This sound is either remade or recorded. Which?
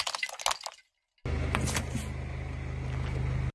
recorded